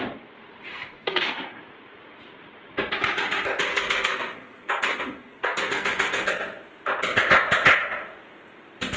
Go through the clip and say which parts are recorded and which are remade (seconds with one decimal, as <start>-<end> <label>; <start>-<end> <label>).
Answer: 0.0-0.7 recorded; 0.7-1.6 remade; 1.6-3.7 recorded; 3.7-6.3 remade; 6.3-9.0 recorded

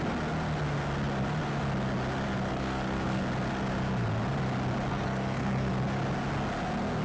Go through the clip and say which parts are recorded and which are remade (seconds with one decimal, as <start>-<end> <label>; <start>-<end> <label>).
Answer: 0.0-2.5 recorded; 2.5-3.2 remade; 3.2-4.9 recorded; 4.9-5.7 remade; 5.7-7.0 recorded